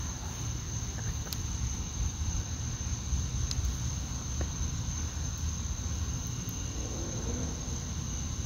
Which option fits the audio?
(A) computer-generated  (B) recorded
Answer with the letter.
B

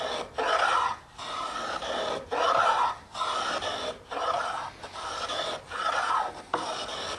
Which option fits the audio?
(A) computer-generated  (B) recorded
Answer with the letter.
B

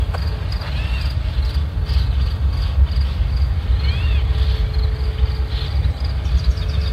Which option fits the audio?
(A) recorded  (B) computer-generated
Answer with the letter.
A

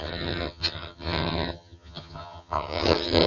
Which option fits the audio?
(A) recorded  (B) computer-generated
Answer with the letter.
B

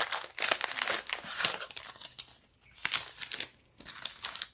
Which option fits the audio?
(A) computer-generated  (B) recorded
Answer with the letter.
B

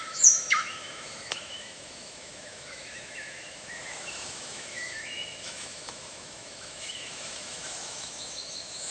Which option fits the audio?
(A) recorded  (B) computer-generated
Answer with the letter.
B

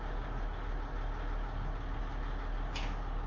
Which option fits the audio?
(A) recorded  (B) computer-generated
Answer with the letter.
A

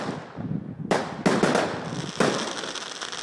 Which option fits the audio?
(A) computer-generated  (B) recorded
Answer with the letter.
B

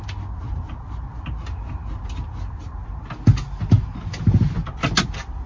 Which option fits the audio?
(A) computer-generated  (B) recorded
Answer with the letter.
B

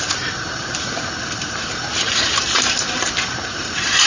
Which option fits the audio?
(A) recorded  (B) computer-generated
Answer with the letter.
B